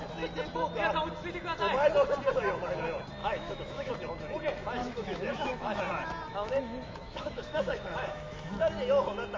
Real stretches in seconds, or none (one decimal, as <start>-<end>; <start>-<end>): 0.0-3.2; 3.9-4.8; 5.8-6.3; 8.5-9.4